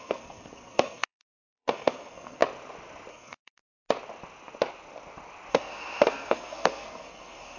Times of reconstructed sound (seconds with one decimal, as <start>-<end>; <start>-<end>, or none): 0.0-2.4; 3.1-3.6; 5.5-7.6